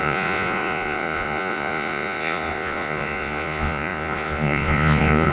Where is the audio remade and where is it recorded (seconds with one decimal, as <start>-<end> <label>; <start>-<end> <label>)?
0.0-5.3 remade